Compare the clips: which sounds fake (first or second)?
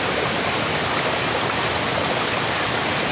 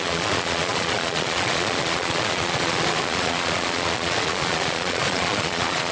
second